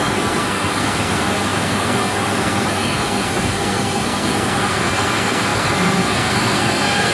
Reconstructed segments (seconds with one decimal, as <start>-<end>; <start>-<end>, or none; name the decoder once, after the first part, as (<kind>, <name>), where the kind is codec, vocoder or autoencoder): 0.0-7.1 (codec, SNAC)